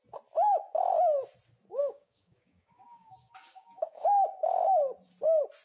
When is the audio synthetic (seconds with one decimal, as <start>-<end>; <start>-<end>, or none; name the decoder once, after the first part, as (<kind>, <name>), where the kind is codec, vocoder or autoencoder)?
1.8-4.8 (codec, DAC)